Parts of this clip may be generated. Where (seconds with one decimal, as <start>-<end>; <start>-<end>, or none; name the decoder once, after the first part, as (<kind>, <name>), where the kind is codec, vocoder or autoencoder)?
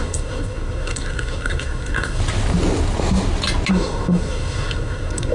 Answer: 0.0-2.2 (codec, SNAC); 3.7-5.3